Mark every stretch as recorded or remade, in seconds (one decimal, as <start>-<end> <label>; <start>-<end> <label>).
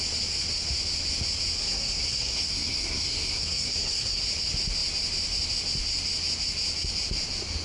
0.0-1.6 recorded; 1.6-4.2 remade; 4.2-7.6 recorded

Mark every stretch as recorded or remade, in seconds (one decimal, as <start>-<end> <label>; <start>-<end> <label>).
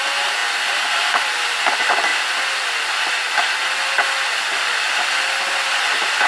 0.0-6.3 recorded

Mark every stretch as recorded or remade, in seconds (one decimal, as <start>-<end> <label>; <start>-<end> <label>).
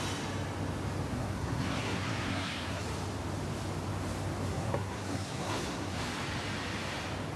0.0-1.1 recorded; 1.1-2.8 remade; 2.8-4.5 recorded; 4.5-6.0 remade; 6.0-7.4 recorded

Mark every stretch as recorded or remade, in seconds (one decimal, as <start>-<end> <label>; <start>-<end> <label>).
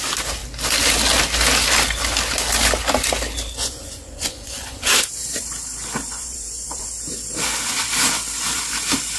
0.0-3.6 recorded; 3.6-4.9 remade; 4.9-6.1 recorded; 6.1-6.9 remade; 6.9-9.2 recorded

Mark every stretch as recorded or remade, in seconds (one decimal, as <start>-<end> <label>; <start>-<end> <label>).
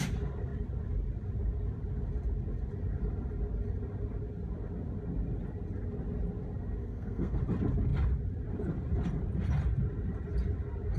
0.0-6.8 recorded; 6.8-7.4 remade; 7.4-11.0 recorded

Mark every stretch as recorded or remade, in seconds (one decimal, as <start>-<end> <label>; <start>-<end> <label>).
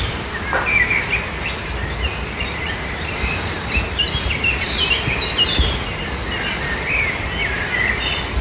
0.0-2.1 recorded; 2.1-2.7 remade; 2.7-8.4 recorded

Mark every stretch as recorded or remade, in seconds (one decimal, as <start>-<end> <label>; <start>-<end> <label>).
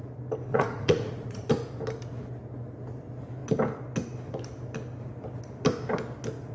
0.0-0.5 recorded; 0.5-1.5 remade; 1.5-6.5 recorded